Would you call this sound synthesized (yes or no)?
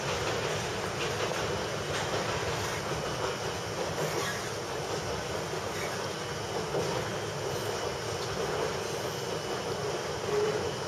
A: no